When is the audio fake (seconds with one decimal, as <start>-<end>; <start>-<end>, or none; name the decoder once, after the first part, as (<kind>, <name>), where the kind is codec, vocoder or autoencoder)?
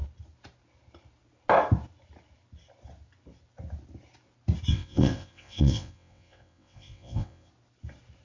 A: 4.7-7.5 (vocoder, WaveNeXt)